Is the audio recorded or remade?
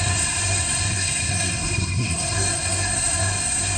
remade